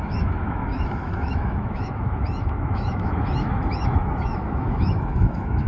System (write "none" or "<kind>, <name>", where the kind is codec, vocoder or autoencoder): autoencoder, DAC-VAE